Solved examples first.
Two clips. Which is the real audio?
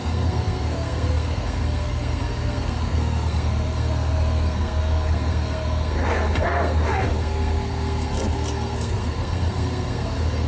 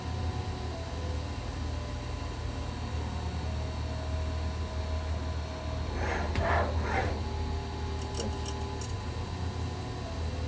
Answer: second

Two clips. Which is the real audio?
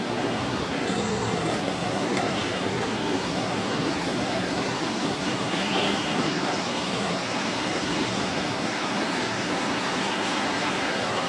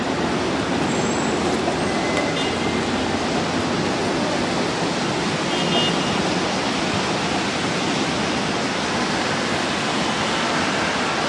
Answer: second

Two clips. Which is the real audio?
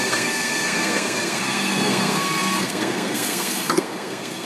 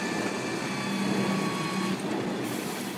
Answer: second